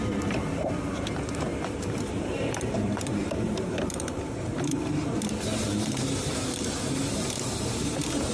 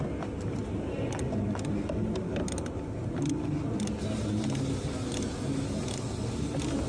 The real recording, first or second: second